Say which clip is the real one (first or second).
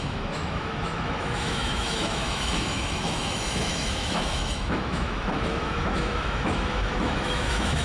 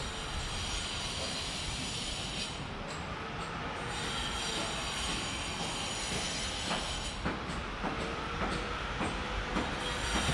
second